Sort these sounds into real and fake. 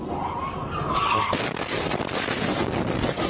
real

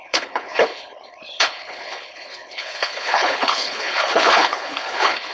fake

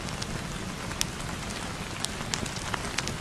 real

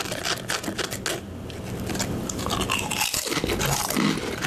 real